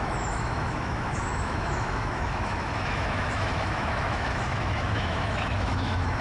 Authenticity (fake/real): fake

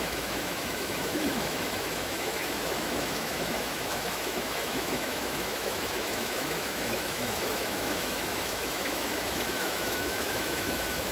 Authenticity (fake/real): fake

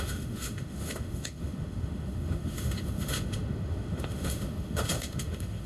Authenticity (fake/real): fake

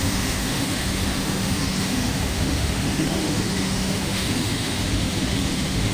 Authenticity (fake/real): fake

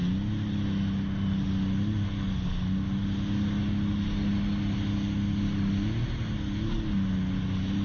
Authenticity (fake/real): real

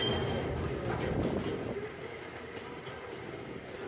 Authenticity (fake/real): real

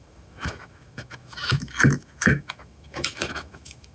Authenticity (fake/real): fake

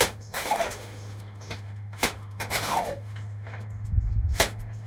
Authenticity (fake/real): fake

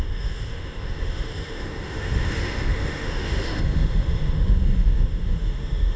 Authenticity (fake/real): fake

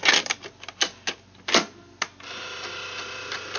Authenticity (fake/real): real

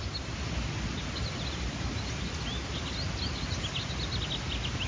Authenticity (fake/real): real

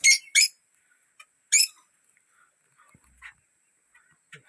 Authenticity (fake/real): real